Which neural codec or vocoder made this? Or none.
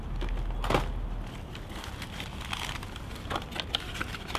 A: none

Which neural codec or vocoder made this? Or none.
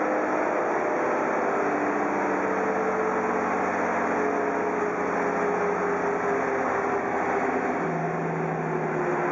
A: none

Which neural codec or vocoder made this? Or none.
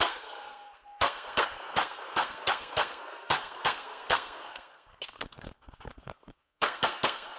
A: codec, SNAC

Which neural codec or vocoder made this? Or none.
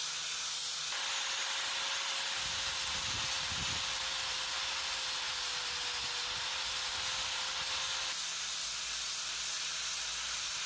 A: none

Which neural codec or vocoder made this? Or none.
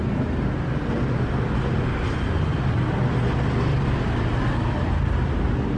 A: none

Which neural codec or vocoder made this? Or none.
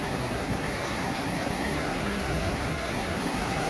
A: codec, SNAC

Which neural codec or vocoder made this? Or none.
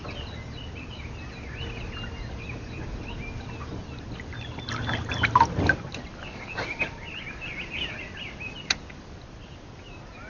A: none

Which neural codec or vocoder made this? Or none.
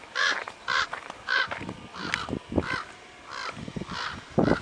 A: none